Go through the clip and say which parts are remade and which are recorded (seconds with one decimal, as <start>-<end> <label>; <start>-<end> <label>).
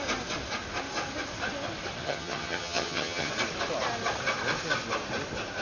0.0-2.0 recorded; 2.0-3.3 remade; 3.3-5.6 recorded